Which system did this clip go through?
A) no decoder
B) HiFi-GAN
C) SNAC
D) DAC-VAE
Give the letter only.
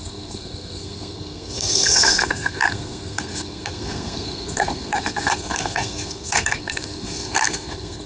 C